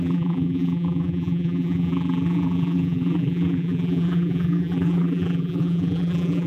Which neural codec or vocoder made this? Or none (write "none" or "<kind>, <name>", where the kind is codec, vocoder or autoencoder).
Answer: vocoder, BigVGAN v2